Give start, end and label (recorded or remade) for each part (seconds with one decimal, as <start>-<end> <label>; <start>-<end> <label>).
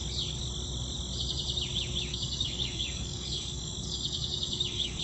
0.0-2.1 recorded; 2.1-5.0 remade